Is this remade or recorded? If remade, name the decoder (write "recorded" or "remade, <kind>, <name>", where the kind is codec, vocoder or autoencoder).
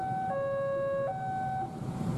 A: recorded